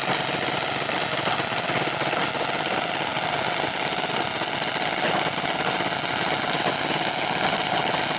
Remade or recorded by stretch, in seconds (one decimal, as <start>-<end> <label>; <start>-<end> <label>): 0.0-8.2 recorded